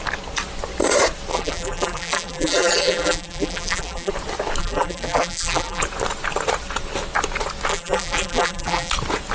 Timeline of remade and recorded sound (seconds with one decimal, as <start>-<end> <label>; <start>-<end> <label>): 0.0-1.3 recorded; 1.3-4.1 remade; 4.1-4.6 recorded; 4.6-5.8 remade; 5.8-7.7 recorded; 7.7-8.9 remade; 8.9-9.3 recorded